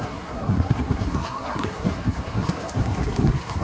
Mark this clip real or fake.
fake